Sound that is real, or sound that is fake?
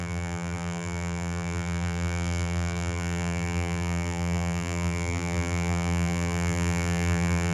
fake